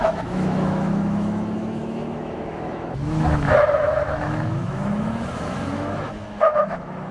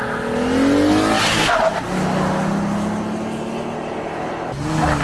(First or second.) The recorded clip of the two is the second